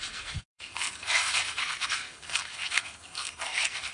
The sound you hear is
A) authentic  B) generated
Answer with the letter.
B